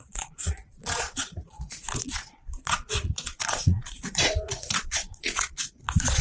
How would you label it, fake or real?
fake